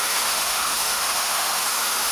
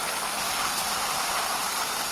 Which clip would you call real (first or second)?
second